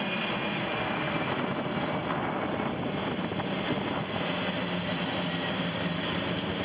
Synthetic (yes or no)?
no